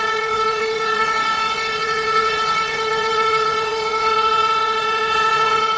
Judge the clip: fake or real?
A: fake